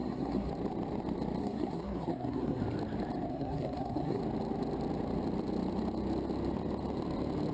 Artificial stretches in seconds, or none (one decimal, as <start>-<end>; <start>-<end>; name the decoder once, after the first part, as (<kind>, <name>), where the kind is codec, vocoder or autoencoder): 0.0-0.5 (codec, SNAC); 1.4-2.6; 3.3-4.2